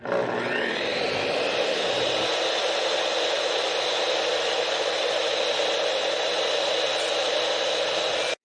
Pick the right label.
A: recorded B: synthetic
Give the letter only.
A